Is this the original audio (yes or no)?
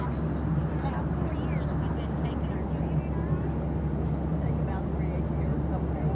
yes